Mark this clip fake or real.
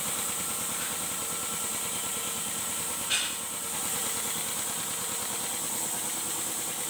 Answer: real